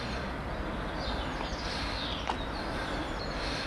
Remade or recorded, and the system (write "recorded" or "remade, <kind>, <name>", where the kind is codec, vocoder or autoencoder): recorded